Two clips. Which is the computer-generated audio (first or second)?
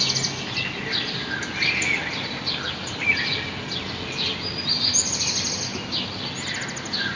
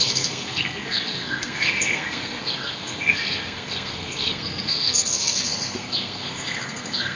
second